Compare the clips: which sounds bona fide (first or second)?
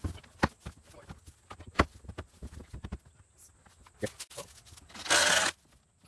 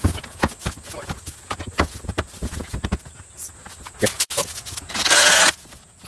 first